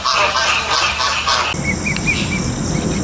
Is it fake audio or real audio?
real